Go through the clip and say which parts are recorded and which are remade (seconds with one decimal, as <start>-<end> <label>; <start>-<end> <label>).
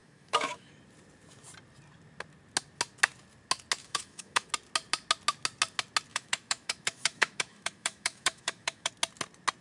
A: 0.0-0.7 remade; 0.7-3.8 recorded; 3.8-4.5 remade; 4.5-6.1 recorded; 6.1-8.9 remade; 8.9-9.6 recorded